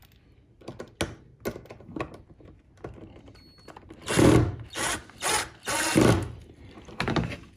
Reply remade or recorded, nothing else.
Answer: recorded